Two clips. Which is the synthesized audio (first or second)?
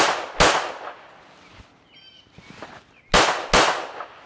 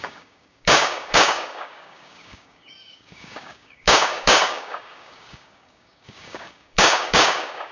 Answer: second